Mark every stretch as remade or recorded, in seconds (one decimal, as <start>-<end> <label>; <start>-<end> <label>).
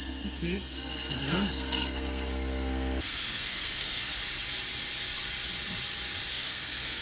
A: 0.0-4.2 remade; 4.2-6.3 recorded; 6.3-7.0 remade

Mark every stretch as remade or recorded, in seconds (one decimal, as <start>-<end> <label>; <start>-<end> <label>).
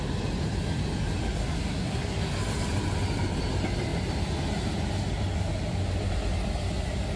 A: 0.0-1.4 recorded; 1.4-2.3 remade; 2.3-7.2 recorded